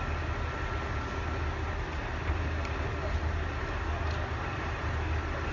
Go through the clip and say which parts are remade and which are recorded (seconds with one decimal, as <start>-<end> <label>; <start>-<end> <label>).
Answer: 0.0-5.5 recorded